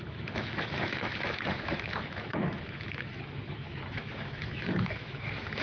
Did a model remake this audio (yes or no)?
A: yes